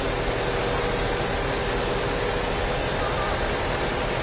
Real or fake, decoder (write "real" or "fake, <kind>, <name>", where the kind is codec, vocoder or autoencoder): real